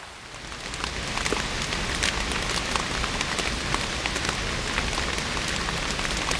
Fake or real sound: real